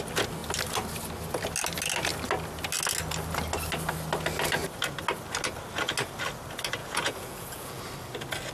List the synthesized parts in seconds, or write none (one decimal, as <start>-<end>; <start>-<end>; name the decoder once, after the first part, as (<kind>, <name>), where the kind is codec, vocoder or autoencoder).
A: 6.8-7.8 (vocoder, Vocos)